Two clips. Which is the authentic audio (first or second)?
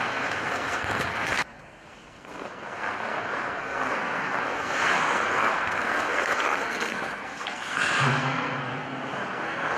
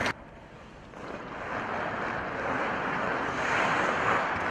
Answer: second